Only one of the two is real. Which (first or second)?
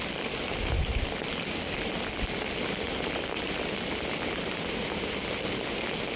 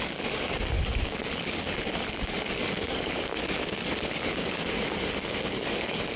first